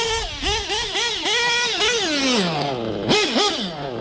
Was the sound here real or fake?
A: real